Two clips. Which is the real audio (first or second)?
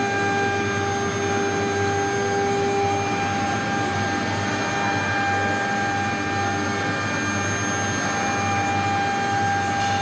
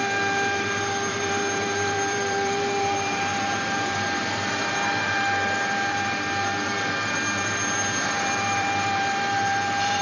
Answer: first